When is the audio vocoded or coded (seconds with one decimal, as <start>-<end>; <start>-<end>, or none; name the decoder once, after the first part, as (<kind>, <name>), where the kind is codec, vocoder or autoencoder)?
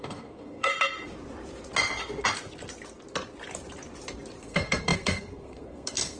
0.0-0.7 (codec, SNAC); 4.4-6.2